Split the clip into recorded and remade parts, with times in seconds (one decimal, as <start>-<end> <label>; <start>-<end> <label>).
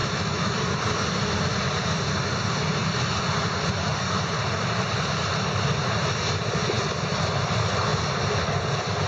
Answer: 0.0-0.8 remade; 0.8-9.1 recorded